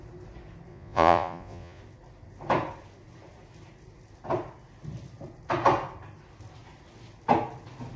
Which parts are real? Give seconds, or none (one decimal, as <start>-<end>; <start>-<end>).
0.0-0.7; 1.8-8.0